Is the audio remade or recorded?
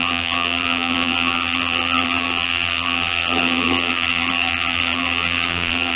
remade